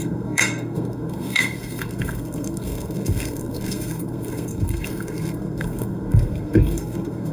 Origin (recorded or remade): remade